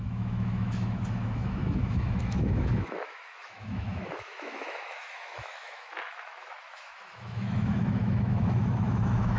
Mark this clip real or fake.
fake